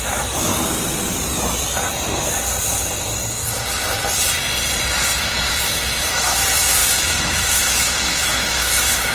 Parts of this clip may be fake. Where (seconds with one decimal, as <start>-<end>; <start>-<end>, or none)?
0.0-0.5; 5.2-9.1